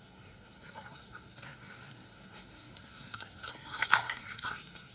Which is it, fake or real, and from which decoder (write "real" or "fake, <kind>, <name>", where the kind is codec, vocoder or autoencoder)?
fake, codec, SNAC